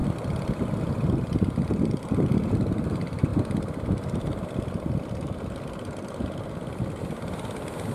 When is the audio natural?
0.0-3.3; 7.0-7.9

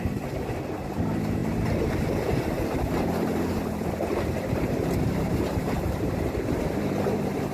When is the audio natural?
none

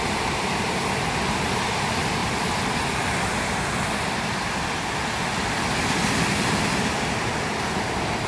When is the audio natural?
2.2-7.2

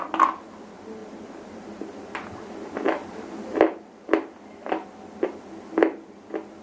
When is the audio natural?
0.0-6.6

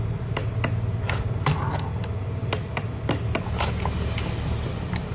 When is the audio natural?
0.0-5.1